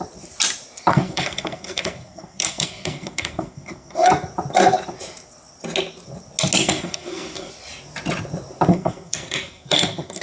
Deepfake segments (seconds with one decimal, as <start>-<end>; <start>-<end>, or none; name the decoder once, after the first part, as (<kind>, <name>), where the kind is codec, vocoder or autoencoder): 0.9-4.1 (codec, SNAC); 6.6-7.5; 8.7-10.2